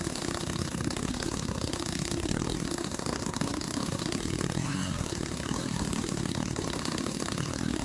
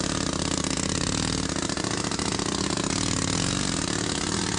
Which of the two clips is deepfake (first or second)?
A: first